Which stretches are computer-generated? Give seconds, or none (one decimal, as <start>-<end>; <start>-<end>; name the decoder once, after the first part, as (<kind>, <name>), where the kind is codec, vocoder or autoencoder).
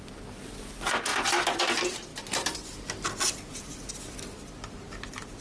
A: none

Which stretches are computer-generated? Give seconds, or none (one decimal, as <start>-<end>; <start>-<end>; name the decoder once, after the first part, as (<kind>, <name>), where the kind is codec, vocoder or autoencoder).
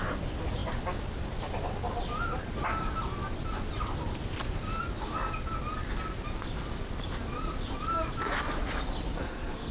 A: 9.2-9.7 (codec, SNAC)